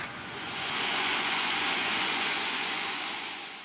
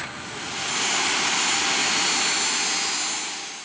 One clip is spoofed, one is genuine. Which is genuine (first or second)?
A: second